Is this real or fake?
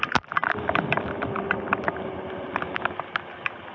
real